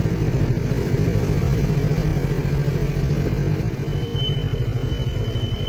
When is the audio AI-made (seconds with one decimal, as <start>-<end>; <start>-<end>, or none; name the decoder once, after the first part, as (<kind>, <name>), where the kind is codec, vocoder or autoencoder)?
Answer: 0.0-1.6 (vocoder, BigVGAN v2)